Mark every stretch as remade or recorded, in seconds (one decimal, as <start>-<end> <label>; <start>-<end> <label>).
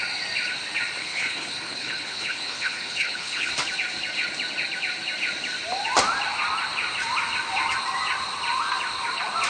0.0-1.0 recorded; 1.0-3.5 remade; 3.5-9.5 recorded